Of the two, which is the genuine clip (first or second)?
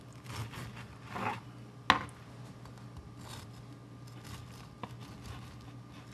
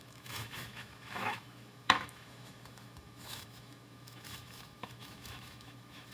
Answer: first